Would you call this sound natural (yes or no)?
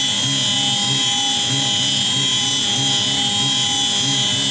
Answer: yes